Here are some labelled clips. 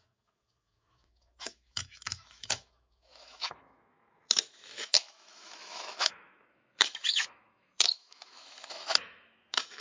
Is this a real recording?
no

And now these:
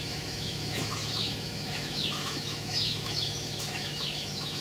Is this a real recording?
no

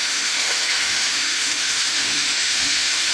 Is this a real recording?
no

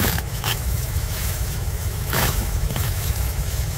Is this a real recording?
no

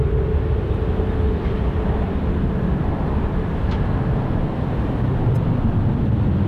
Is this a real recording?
yes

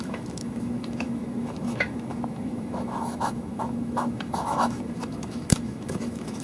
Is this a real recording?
no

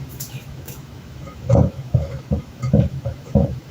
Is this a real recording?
no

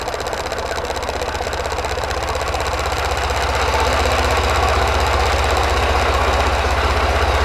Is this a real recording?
yes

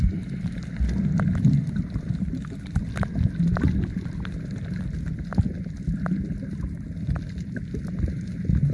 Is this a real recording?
yes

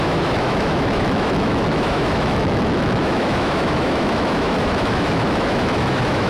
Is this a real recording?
no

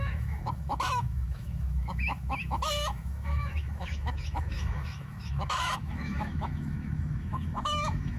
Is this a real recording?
no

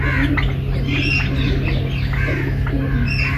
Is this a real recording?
yes